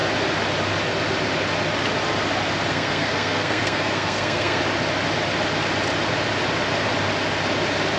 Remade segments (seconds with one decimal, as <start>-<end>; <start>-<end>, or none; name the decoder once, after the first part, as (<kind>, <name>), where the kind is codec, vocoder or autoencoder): 2.7-4.6 (codec, SNAC)